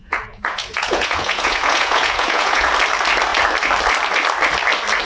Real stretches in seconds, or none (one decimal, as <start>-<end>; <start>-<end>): 2.7-5.0